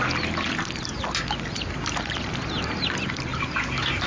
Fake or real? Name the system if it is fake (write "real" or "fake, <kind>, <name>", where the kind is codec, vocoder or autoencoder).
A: real